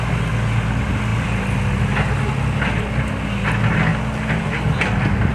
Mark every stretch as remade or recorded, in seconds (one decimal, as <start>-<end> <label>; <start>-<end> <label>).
0.0-3.9 recorded; 3.9-5.3 remade